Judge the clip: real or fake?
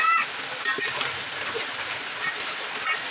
real